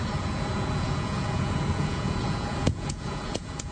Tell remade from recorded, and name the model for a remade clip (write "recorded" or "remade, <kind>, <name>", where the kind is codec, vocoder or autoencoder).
remade, vocoder, Vocos